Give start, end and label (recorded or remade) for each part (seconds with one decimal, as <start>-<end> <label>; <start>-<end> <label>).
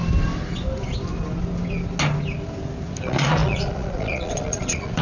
0.0-3.0 recorded; 3.0-5.0 remade